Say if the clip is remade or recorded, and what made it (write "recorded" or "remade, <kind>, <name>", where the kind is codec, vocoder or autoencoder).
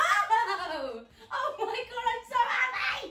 recorded